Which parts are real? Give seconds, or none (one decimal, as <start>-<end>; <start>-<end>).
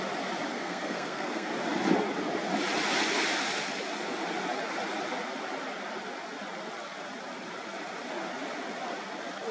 0.0-0.5; 1.5-9.5